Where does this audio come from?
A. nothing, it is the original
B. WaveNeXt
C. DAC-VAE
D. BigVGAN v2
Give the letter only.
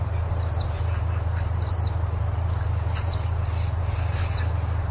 A